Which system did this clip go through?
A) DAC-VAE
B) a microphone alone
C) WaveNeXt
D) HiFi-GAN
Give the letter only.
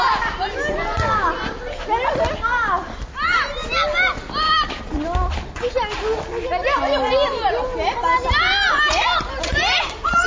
B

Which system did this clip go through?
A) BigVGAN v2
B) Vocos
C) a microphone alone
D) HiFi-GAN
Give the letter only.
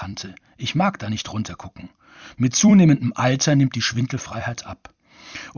A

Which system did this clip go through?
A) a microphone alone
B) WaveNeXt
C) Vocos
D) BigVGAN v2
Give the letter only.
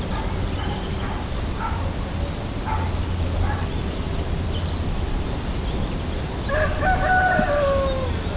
A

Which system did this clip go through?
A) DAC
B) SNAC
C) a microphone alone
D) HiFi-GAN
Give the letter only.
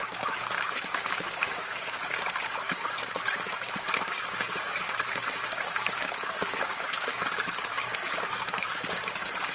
A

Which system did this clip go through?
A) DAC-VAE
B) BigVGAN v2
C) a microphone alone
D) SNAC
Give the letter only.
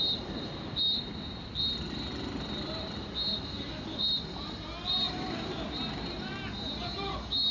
C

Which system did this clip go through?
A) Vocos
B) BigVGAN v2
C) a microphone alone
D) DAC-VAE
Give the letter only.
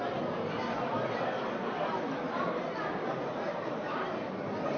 C